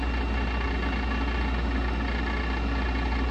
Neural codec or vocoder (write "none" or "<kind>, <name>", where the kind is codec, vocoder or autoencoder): none